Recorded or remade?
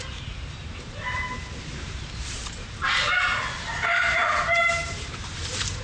remade